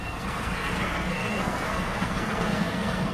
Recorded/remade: remade